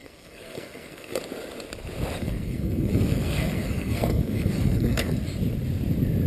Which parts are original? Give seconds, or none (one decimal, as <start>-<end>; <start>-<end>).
1.2-2.2; 5.2-6.3